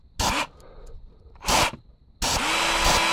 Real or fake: real